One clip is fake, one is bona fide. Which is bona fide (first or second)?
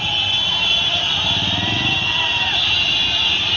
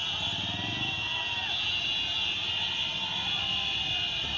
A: second